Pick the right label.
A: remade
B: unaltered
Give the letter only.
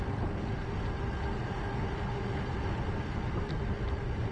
B